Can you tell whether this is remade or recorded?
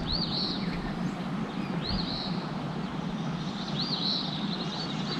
recorded